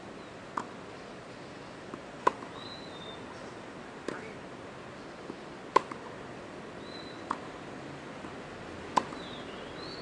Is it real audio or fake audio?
real